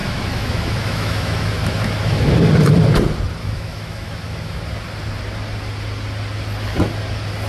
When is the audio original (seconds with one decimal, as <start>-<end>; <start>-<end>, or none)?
2.3-3.4; 4.6-7.5